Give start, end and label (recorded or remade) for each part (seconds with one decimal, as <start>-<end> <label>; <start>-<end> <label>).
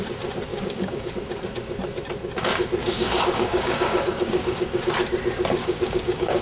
0.0-0.5 recorded; 0.5-1.1 remade; 1.1-2.8 recorded; 2.8-4.9 remade; 4.9-5.6 recorded; 5.6-6.4 remade